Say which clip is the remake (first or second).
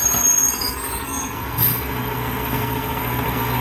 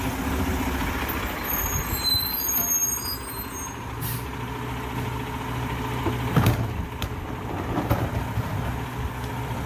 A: first